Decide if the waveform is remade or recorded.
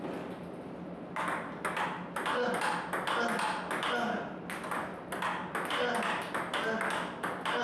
recorded